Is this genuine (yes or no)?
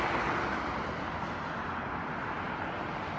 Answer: yes